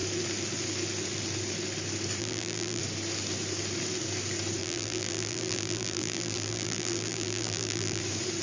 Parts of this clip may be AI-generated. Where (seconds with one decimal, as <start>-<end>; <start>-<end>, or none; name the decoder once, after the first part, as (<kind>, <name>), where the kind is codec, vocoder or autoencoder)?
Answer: 2.2-2.8 (vocoder, BigVGAN v2); 4.6-8.0